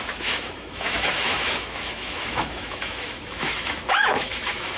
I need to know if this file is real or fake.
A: fake